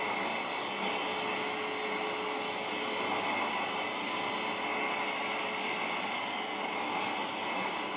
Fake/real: real